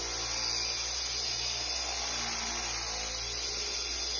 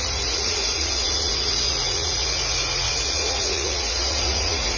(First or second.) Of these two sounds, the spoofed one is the second